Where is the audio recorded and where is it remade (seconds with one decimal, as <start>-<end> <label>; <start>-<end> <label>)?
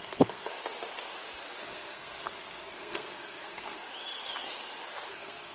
0.0-0.5 remade; 0.5-1.6 recorded; 1.6-3.8 remade; 3.8-5.1 recorded; 5.1-5.5 remade